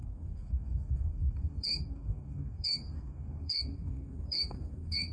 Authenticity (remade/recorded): remade